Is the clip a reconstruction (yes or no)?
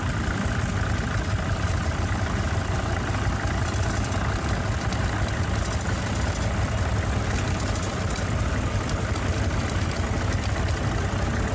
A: no